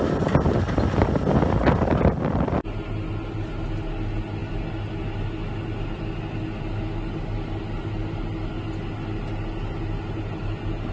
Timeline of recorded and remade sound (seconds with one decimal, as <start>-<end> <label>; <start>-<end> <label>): 0.0-10.9 recorded